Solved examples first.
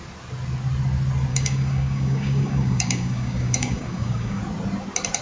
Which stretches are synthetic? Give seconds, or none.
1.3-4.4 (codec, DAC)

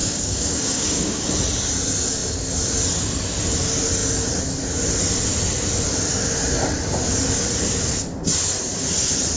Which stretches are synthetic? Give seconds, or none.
0.0-1.3 (codec, DAC)